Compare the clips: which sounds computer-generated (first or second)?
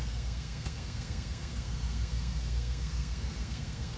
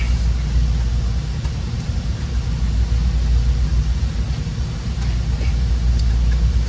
first